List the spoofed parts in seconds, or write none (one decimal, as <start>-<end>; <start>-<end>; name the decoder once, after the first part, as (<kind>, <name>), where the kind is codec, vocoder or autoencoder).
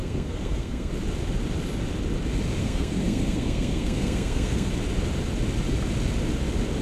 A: 0.0-0.9 (codec, SNAC); 2.6-4.7